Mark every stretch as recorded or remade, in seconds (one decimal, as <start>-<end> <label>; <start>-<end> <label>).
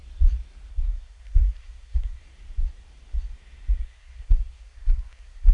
0.0-0.7 recorded; 0.7-2.2 remade; 2.2-3.8 recorded; 3.8-5.5 remade